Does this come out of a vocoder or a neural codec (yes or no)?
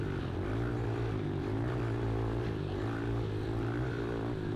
no